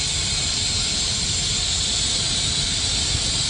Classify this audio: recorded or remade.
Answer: recorded